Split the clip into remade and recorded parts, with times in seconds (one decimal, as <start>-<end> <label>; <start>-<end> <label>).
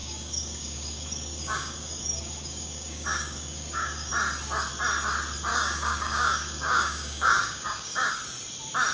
0.0-4.1 remade; 4.1-5.5 recorded; 5.5-8.1 remade; 8.1-8.9 recorded